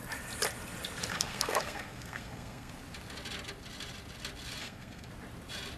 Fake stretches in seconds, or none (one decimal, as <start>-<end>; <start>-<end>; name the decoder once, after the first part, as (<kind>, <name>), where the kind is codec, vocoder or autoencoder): 1.1-2.7 (codec, SNAC); 4.6-5.1